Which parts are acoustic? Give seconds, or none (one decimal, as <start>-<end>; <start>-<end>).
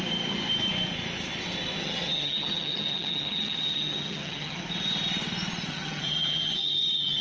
0.0-1.8; 4.6-5.7